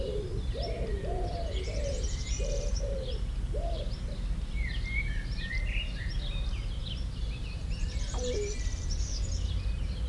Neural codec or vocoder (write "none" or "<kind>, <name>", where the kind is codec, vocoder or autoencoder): vocoder, BigVGAN v2